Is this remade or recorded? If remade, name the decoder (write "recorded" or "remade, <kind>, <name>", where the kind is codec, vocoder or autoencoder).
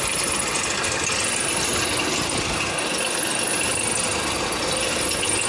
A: recorded